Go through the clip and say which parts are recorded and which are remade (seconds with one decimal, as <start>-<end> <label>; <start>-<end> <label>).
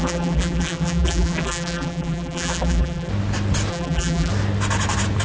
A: 0.0-3.1 remade; 3.1-3.7 recorded; 3.7-4.3 remade; 4.3-5.2 recorded